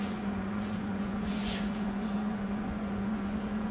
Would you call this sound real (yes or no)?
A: no